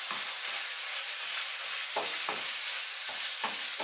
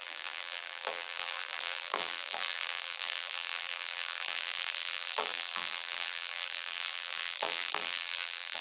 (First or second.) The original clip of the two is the first